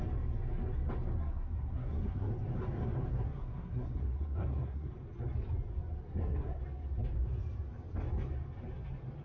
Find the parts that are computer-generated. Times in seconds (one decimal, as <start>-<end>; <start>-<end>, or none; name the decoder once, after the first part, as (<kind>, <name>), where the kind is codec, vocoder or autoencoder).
1.2-2.3 (codec, SNAC); 3.1-4.9; 6.0-6.6